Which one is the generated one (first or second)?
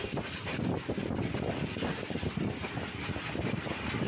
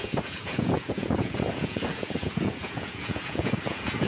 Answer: second